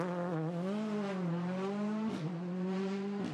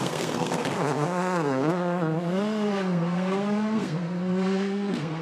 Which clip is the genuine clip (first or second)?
first